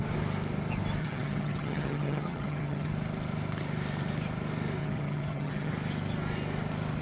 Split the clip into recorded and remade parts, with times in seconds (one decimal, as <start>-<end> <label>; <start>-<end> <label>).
0.0-1.0 recorded; 1.0-2.9 remade; 2.9-4.8 recorded; 4.8-5.7 remade; 5.7-7.0 recorded